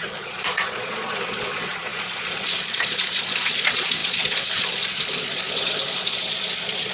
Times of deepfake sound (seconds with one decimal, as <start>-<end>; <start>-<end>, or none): 0.0-6.9